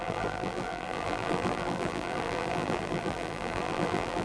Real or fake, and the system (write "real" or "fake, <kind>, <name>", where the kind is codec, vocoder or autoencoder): fake, vocoder, BigVGAN v2